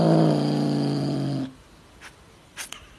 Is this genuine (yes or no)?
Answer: yes